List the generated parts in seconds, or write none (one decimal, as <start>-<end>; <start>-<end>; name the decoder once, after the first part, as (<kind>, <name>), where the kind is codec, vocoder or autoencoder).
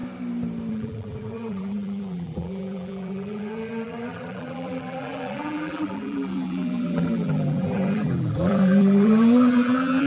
0.7-10.1 (vocoder, BigVGAN v2)